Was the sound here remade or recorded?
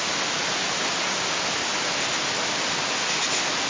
recorded